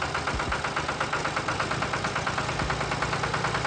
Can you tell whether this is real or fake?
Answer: real